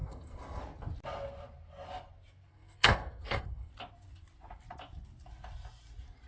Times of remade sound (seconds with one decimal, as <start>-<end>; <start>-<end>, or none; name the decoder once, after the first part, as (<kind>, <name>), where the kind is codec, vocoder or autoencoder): 0.0-0.6 (codec, SNAC); 2.5-3.7